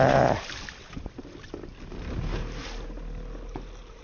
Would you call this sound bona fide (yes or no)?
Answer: yes